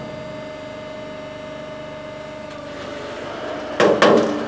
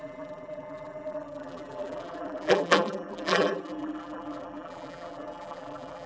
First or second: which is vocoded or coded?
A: second